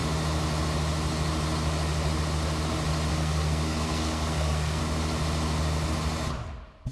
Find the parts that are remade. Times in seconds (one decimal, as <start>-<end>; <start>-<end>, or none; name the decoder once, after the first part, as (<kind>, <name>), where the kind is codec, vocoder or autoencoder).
3.1-4.8 (codec, SNAC)